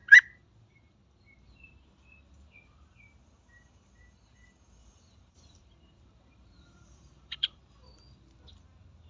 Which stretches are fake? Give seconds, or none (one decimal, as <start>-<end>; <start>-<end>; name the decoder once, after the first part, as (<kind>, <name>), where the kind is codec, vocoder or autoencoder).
0.0-1.5 (vocoder, BigVGAN v2); 4.8-7.6